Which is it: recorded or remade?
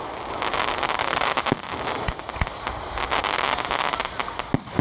recorded